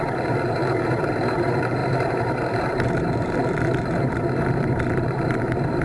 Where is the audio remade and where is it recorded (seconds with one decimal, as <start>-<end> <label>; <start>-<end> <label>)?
0.0-5.8 remade